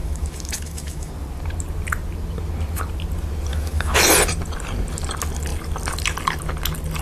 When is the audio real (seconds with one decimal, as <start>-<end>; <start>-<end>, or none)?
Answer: 1.1-3.5; 4.0-7.0